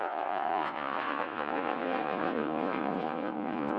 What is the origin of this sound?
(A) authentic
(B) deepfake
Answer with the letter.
B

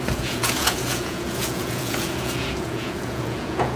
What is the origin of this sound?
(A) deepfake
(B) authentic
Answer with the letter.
A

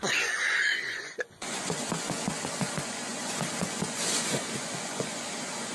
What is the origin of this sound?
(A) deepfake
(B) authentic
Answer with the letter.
A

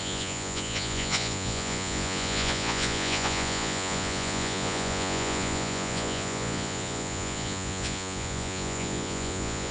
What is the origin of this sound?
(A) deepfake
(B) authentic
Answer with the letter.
A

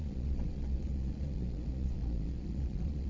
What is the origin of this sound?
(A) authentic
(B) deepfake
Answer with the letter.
B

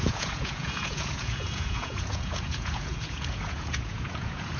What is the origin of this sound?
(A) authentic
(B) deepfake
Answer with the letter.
B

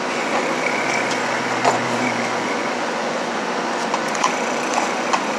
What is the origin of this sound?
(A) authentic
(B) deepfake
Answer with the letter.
B